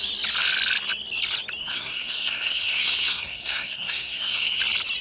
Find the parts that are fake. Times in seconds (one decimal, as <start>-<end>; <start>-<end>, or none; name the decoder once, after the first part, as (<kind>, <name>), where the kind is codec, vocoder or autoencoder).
1.6-4.6 (codec, SNAC)